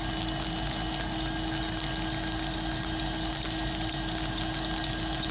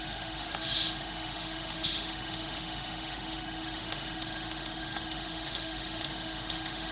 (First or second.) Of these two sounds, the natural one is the first